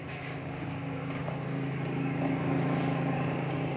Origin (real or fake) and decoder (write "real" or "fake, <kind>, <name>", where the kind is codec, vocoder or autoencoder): fake, codec, DAC